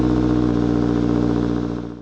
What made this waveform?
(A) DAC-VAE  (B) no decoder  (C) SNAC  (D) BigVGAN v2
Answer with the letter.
B